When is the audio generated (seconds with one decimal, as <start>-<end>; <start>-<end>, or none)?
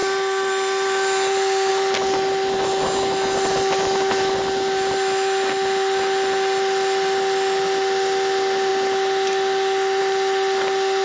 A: none